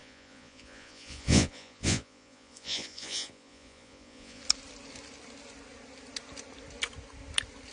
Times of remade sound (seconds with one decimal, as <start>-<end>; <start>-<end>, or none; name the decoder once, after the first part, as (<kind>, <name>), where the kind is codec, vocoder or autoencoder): 0.0-4.4 (vocoder, Vocos)